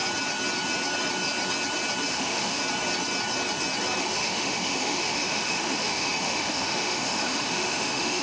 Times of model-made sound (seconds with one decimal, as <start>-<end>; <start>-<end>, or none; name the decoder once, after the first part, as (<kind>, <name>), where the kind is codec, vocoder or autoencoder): 2.1-2.6 (autoencoder, DAC-VAE); 4.0-8.2